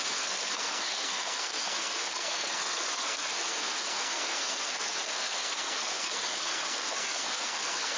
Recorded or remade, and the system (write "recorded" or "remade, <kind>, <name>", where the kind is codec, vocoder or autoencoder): remade, codec, SNAC